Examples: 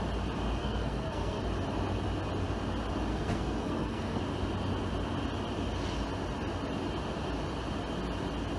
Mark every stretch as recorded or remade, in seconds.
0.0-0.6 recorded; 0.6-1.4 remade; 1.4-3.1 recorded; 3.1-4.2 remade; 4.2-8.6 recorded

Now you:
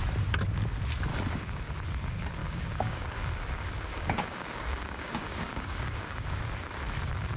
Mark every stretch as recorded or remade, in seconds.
0.0-1.1 recorded; 1.1-1.7 remade; 1.7-2.4 recorded; 2.4-6.4 remade; 6.4-7.4 recorded

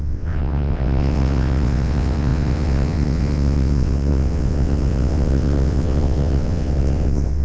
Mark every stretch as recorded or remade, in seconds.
0.0-7.4 remade

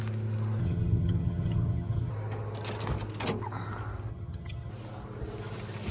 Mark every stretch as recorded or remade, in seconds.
0.0-0.6 recorded; 0.6-2.1 remade; 2.1-4.1 recorded; 4.1-4.7 remade; 4.7-5.9 recorded